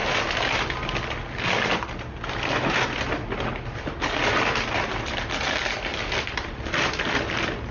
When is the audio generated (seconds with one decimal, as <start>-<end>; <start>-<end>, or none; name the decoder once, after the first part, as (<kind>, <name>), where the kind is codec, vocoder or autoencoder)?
none